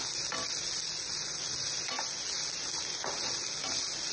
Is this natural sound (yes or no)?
yes